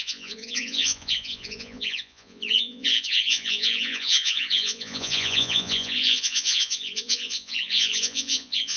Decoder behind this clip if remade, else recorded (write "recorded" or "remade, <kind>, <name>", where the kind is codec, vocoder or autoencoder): remade, vocoder, Vocos